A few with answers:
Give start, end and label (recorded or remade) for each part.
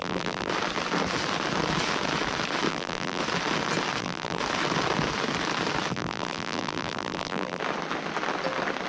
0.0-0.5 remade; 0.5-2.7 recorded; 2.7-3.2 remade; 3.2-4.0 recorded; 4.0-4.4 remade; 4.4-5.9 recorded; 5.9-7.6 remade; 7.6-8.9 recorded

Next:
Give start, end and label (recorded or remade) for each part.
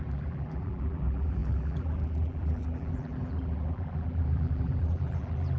0.0-5.6 remade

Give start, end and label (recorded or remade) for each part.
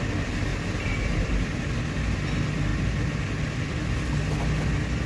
0.0-0.5 recorded; 0.5-1.7 remade; 1.7-2.7 recorded; 2.7-3.4 remade; 3.4-5.1 recorded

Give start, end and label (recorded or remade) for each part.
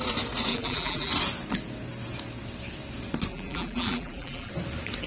0.0-0.5 recorded; 0.5-1.1 remade; 1.1-3.3 recorded; 3.3-4.5 remade; 4.5-5.1 recorded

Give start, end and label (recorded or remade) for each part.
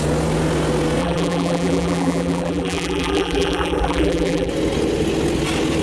0.0-1.0 recorded; 1.0-4.5 remade; 4.5-5.8 recorded